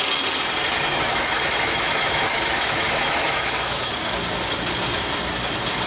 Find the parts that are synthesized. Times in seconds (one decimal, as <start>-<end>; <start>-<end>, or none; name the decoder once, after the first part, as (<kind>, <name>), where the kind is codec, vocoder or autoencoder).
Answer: 1.1-3.9 (autoencoder, DAC-VAE)